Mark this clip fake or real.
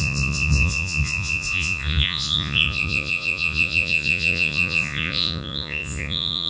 fake